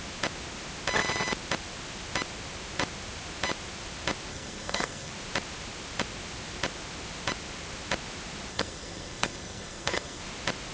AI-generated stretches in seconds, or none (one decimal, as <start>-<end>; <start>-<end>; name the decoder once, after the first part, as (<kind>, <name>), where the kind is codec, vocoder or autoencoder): 4.3-5.1 (codec, SNAC); 8.5-10.2